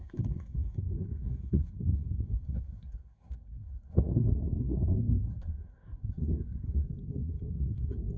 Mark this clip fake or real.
fake